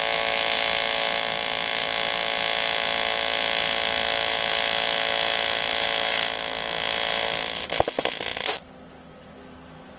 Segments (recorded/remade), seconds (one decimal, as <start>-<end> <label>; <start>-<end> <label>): 0.0-10.0 recorded